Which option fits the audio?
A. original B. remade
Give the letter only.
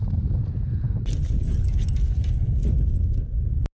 A